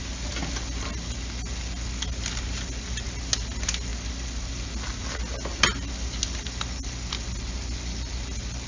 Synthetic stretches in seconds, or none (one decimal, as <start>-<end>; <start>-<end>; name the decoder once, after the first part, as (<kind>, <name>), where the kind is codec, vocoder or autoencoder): none